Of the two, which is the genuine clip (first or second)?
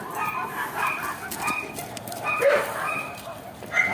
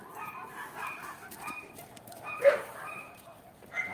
first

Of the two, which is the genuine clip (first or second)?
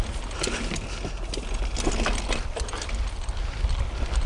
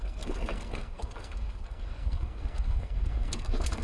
first